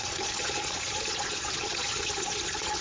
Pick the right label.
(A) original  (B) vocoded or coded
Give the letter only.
B